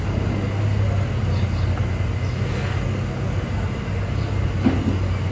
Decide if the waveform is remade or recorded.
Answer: recorded